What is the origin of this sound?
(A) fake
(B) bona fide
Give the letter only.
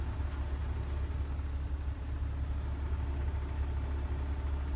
B